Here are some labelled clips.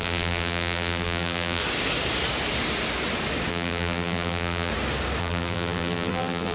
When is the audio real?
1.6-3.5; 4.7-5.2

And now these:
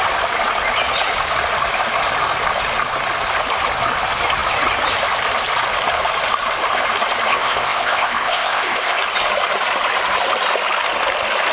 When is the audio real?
0.0-7.3; 9.0-11.5

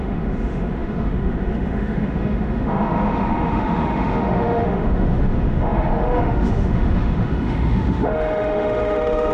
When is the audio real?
none

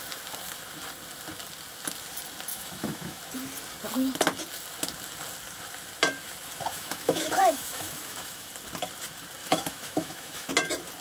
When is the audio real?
0.0-2.5; 3.2-6.7; 8.5-9.4; 10.5-11.0

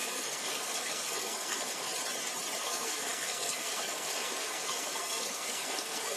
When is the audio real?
1.9-2.6

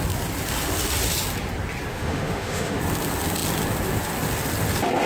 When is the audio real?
0.0-1.9; 2.8-5.1

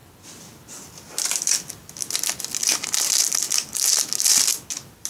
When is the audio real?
0.0-5.1